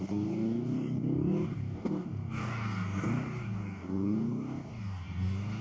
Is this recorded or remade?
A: remade